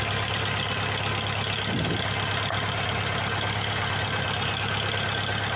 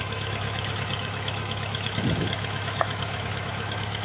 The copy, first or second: second